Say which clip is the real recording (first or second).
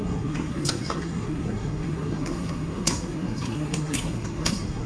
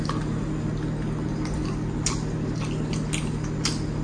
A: second